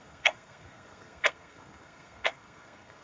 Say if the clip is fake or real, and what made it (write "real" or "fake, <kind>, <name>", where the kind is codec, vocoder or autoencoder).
fake, codec, SNAC